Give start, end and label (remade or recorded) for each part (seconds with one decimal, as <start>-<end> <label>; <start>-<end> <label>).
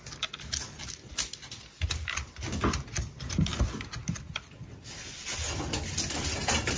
0.0-6.8 recorded